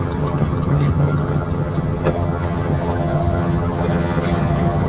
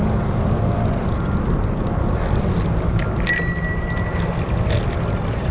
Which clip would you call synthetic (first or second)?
first